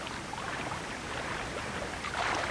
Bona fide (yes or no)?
no